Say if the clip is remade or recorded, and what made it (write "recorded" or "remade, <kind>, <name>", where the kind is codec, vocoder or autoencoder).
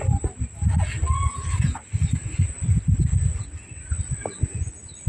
recorded